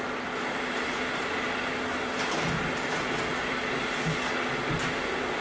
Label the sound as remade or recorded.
recorded